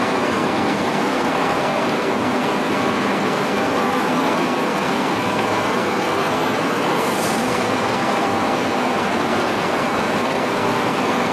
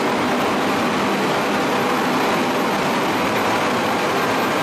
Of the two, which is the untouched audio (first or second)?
second